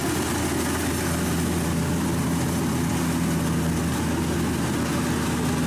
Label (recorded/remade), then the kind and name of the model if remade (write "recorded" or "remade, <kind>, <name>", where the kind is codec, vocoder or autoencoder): recorded